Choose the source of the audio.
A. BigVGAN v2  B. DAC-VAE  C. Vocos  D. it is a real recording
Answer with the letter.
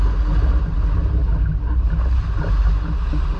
D